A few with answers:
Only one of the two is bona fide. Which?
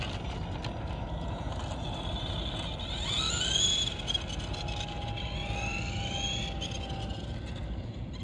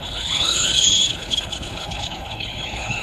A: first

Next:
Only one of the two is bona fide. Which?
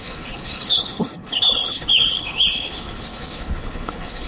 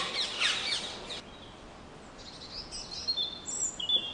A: second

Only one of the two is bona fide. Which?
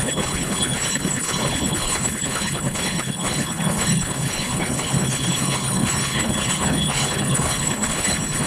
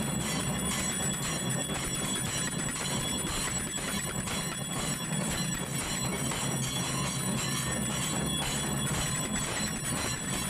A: second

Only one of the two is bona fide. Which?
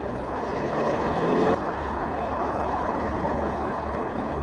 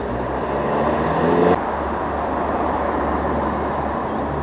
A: second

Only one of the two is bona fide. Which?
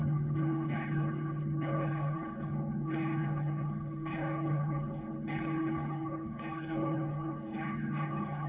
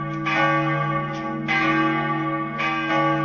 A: second